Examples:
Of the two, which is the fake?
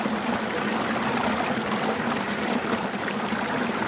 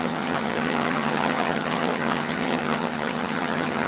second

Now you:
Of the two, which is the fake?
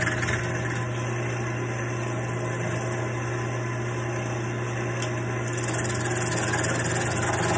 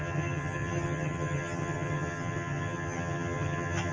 second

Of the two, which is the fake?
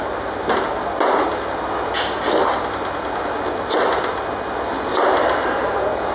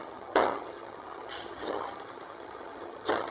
second